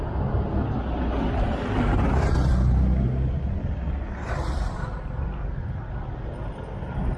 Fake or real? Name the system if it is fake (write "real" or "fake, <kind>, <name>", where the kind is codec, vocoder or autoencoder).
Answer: real